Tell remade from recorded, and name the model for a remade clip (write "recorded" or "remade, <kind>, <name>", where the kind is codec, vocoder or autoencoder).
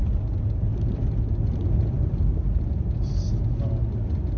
recorded